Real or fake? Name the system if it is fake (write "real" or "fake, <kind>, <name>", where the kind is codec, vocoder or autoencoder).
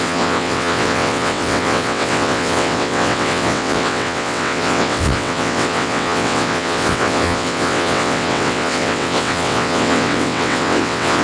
fake, vocoder, WaveNeXt